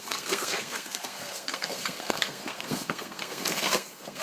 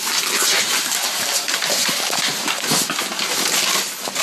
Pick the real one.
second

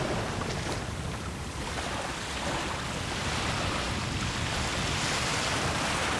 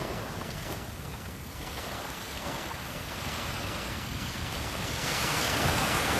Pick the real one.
first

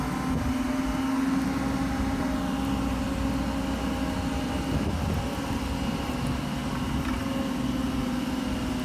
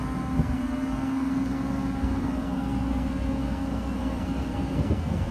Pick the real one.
first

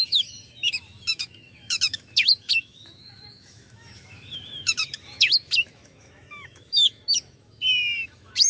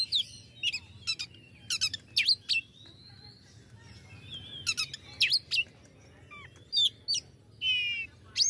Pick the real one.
second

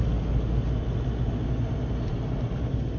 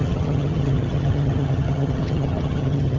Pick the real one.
first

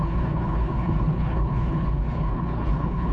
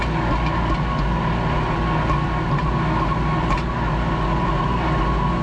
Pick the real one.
second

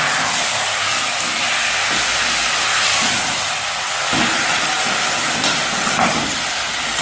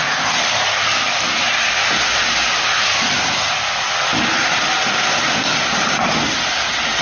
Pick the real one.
first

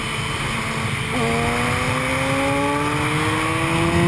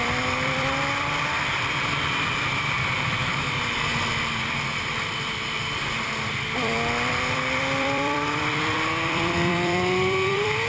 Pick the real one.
first